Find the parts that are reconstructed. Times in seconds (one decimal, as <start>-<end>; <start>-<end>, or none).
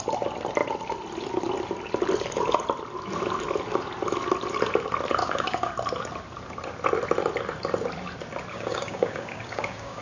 5.2-5.7; 8.5-10.0